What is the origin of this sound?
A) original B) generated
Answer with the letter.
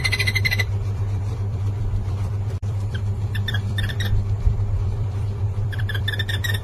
B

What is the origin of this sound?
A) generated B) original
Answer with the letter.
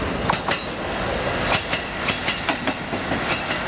B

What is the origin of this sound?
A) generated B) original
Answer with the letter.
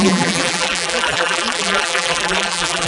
A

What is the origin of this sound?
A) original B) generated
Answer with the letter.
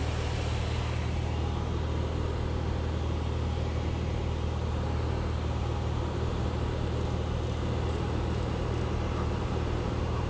A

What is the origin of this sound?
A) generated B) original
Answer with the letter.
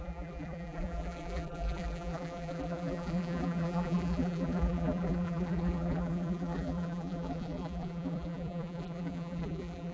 A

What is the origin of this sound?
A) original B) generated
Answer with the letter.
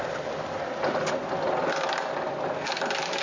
B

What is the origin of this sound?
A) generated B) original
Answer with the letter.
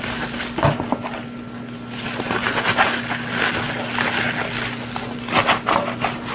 B